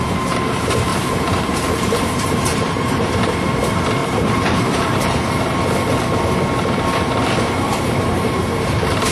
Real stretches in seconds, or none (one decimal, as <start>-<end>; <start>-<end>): 0.0-0.9; 3.0-4.0; 5.4-7.7; 8.4-9.1